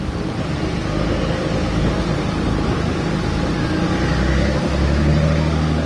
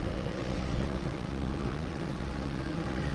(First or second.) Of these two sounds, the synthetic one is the second